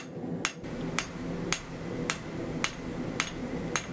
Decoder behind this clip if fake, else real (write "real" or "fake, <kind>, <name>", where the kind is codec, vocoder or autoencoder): real